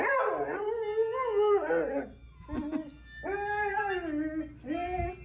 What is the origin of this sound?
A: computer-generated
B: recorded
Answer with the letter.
B